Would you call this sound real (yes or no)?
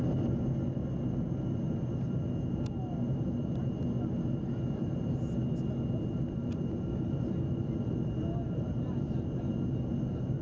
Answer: yes